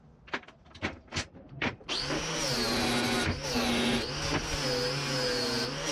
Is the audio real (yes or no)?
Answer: yes